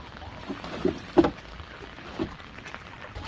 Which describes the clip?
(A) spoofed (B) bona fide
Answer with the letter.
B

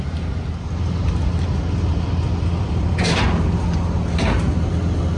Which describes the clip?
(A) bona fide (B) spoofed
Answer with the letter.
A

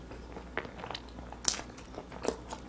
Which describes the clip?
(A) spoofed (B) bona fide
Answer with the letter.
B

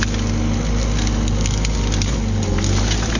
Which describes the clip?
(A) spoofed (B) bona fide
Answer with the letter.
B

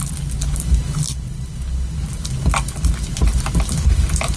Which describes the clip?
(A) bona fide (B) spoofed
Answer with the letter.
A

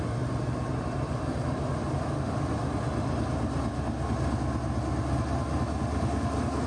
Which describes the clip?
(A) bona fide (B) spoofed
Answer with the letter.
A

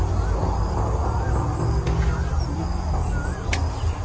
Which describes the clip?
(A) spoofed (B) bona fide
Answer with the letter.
B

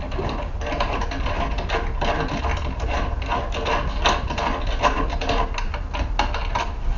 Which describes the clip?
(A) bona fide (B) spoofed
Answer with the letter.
A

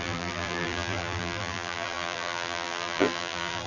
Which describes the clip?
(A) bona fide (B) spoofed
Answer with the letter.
B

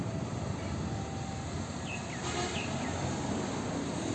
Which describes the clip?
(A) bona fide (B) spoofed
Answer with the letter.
A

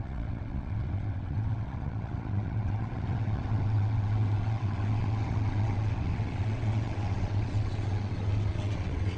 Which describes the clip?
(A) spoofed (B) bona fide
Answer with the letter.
A